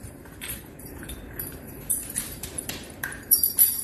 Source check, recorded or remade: remade